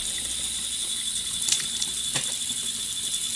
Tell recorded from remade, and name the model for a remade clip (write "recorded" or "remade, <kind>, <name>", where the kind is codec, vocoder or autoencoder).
recorded